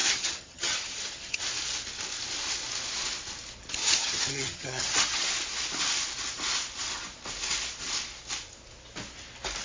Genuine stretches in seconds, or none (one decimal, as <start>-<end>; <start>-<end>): 1.4-3.8; 5.3-9.6